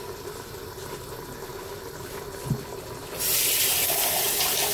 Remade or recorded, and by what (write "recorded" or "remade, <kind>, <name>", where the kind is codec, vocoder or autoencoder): recorded